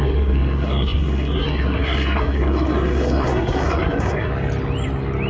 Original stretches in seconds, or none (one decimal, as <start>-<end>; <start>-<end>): 4.3-5.3